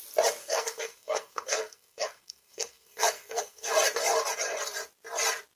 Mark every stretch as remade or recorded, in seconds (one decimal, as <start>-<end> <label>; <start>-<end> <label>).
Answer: 0.0-0.4 recorded; 0.4-3.7 remade; 3.7-5.6 recorded